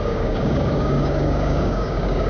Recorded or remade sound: remade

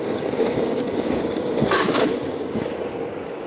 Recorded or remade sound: remade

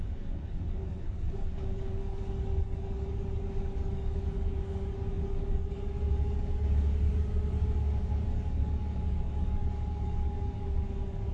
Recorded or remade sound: remade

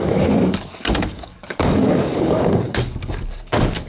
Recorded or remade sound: remade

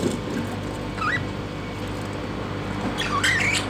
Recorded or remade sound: recorded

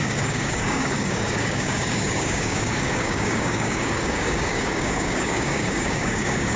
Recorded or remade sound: remade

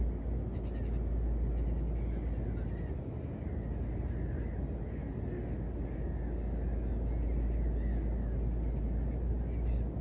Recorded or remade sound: recorded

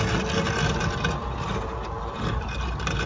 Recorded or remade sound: recorded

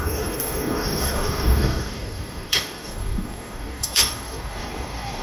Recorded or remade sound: remade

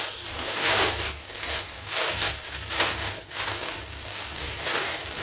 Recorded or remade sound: remade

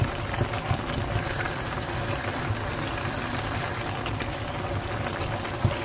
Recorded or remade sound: recorded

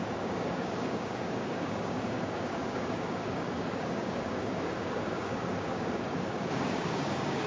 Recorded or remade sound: remade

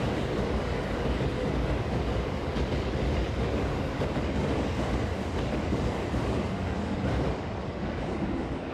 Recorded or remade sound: remade